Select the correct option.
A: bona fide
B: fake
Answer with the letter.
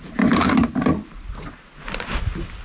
A